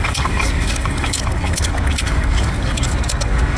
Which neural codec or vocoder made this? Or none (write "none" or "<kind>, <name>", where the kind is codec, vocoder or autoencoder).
codec, DAC